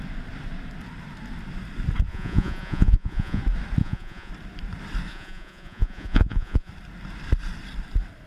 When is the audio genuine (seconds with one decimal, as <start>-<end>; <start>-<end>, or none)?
0.0-2.1; 3.4-3.8; 4.3-5.1; 6.7-8.3